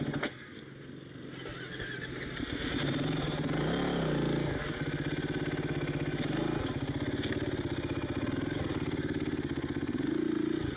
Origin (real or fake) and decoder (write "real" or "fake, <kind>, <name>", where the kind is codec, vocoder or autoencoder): real